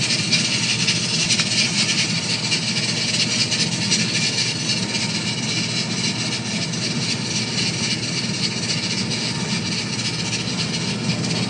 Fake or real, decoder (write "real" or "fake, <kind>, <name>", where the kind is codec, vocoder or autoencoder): real